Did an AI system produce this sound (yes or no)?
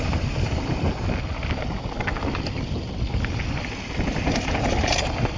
no